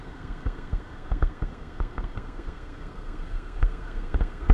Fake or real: fake